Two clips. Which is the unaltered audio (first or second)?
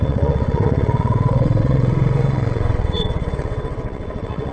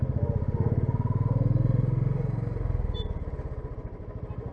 second